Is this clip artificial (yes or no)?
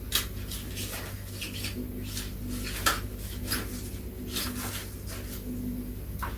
no